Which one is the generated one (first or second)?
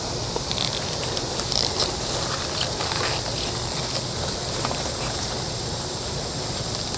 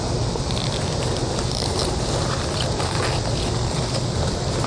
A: first